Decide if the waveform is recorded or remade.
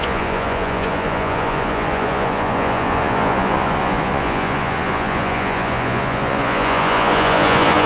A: remade